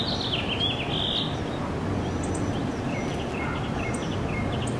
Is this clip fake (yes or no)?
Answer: no